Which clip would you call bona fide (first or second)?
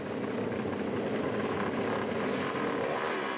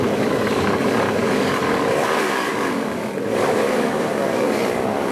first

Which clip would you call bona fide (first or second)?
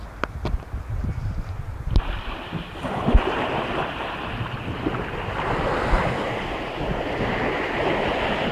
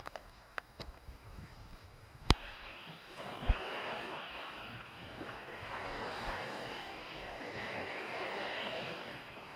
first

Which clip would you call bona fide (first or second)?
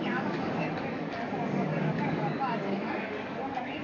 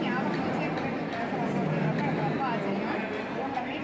second